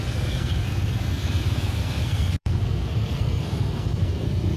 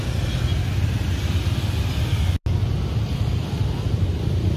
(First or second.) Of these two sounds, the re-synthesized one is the first